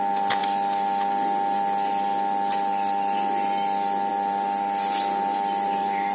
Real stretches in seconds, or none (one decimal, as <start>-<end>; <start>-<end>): 0.0-6.1